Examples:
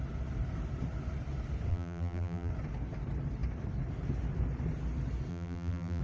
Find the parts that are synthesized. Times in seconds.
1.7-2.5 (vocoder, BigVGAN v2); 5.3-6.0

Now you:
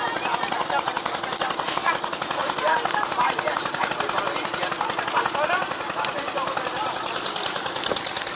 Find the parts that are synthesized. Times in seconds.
2.4-3.9 (vocoder, BigVGAN v2)

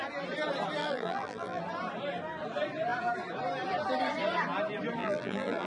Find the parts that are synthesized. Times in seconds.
0.8-1.6 (vocoder, BigVGAN v2); 5.0-5.7

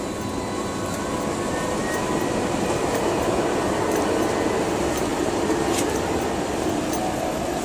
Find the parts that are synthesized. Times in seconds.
1.8-3.8 (vocoder, BigVGAN v2); 5.1-6.0

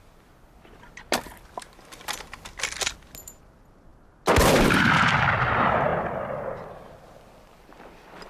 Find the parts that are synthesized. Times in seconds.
none

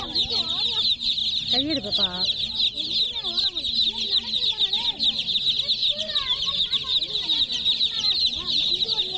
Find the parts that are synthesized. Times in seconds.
5.8-9.2 (vocoder, BigVGAN v2)

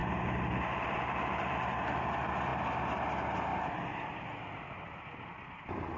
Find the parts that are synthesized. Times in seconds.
0.0-2.5 (vocoder, BigVGAN v2); 3.0-3.5; 5.5-6.0